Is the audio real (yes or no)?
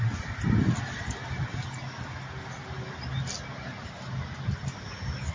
yes